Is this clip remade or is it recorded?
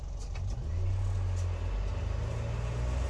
recorded